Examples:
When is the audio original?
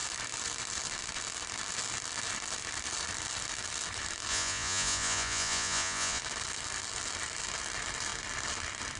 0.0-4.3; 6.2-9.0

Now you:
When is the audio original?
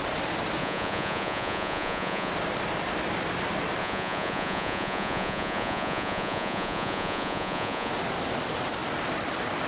0.0-0.6; 2.3-3.8; 7.9-9.7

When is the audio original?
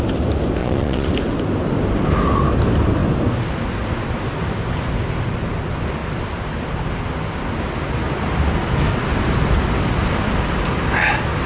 0.0-0.6; 1.1-11.5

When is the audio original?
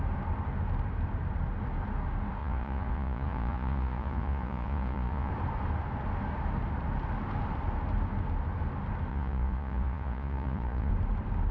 0.0-2.4; 5.3-9.1; 10.9-11.5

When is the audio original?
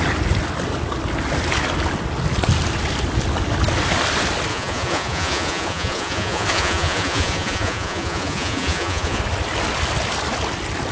0.0-4.5; 9.2-10.9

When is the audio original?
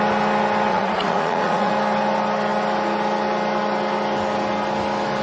0.0-0.7; 1.7-5.2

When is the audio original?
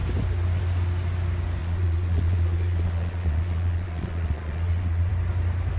0.0-1.6; 5.1-5.8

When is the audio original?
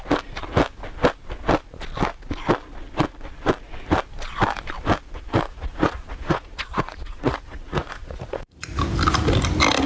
0.0-5.5; 8.7-9.9